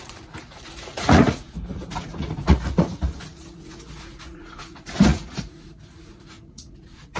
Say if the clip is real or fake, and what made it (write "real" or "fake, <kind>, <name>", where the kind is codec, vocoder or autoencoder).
fake, vocoder, Vocos